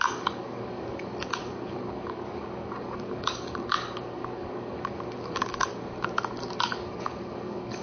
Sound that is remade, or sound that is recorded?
remade